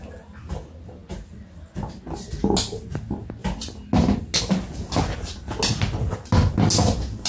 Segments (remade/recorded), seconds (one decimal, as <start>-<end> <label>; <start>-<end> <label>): 0.0-7.3 recorded